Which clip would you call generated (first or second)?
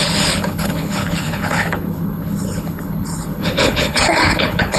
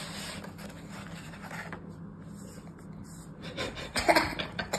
first